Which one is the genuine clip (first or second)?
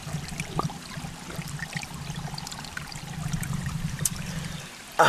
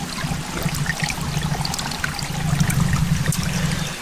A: second